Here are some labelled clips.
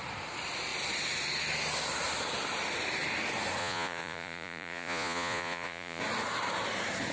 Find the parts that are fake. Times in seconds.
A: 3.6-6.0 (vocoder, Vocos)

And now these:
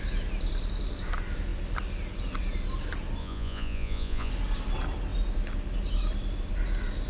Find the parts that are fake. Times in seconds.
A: 3.2-4.3 (vocoder, Vocos)

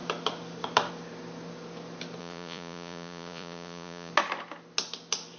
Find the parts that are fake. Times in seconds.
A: 2.2-4.1 (vocoder, Vocos)

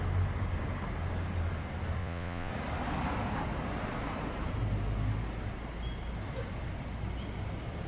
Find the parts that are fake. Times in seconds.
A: 2.0-2.5 (vocoder, Vocos)

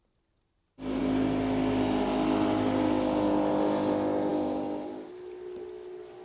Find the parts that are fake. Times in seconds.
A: none

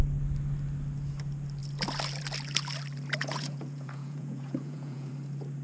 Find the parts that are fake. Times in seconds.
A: 3.2-5.1 (vocoder, Vocos)

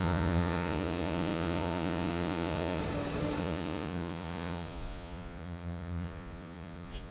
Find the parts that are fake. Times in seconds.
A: 0.0-2.8 (vocoder, Vocos); 3.4-7.1

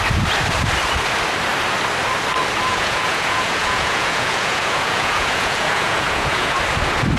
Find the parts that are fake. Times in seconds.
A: 2.7-6.6 (vocoder, Vocos)